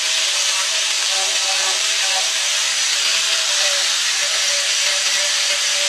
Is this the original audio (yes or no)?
no